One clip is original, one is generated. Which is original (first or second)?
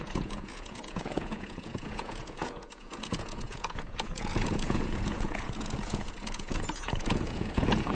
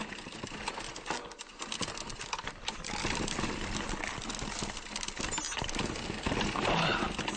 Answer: second